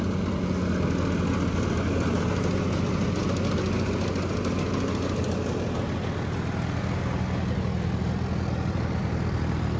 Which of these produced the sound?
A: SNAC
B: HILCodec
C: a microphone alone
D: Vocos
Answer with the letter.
C